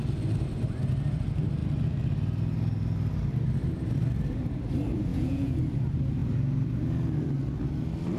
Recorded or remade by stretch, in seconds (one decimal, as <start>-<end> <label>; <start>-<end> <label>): 0.0-5.1 recorded; 5.1-5.6 remade; 5.6-8.2 recorded